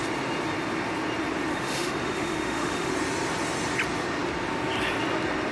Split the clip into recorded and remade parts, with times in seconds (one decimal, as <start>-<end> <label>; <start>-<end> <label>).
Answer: 0.0-1.5 recorded; 1.5-2.9 remade; 2.9-5.5 recorded